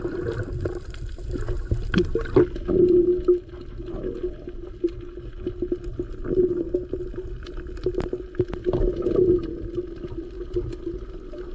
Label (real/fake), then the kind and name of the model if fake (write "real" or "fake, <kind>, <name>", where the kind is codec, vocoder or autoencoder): real